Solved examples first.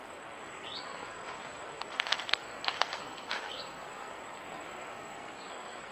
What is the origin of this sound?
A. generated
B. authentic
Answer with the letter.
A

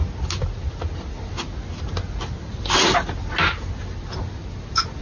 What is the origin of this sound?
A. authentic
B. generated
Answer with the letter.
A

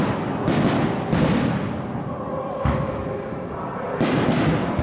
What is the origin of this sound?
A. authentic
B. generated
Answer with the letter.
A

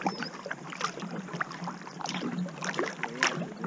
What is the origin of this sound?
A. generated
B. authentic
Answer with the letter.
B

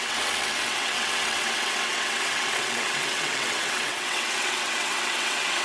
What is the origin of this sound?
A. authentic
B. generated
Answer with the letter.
B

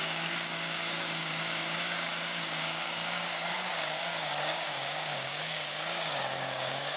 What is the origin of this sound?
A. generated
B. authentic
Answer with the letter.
A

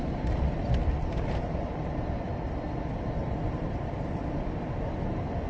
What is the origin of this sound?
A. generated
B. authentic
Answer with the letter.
A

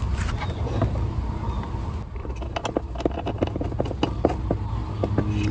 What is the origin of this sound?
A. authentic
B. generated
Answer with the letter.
A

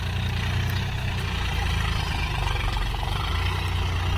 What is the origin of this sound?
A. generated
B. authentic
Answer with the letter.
B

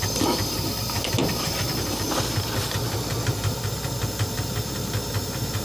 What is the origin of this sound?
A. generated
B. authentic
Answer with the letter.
B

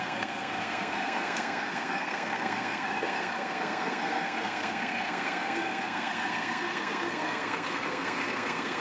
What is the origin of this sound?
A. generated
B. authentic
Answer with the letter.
A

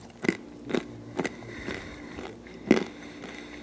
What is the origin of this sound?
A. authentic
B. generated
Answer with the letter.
A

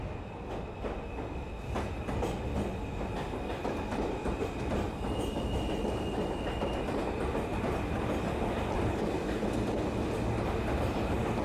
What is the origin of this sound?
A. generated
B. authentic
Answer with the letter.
B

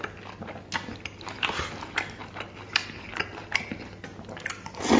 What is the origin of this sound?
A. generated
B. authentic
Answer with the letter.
B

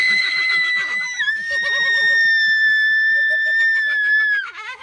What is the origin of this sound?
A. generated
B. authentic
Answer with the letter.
A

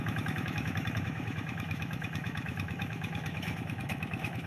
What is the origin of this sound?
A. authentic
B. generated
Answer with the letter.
B